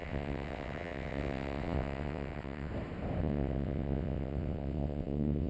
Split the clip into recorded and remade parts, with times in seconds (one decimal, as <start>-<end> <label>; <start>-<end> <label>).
0.0-2.7 remade; 2.7-3.2 recorded; 3.2-5.5 remade